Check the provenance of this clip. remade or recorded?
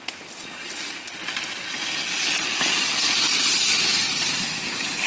recorded